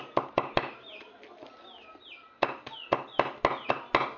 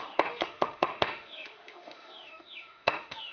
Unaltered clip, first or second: first